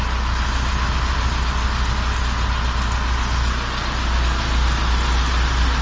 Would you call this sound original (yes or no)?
yes